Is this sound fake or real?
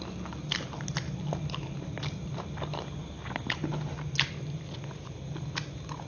real